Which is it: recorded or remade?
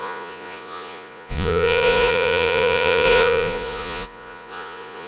remade